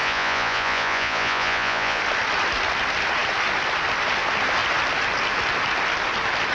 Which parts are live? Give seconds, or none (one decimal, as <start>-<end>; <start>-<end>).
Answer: 2.0-6.5